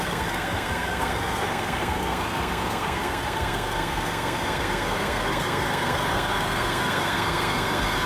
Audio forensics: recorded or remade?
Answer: remade